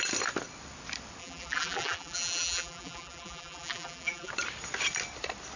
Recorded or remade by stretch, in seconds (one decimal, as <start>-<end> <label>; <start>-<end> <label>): 0.0-1.2 recorded; 1.2-4.3 remade; 4.3-5.6 recorded